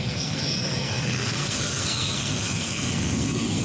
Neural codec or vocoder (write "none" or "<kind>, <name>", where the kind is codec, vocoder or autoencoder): codec, SNAC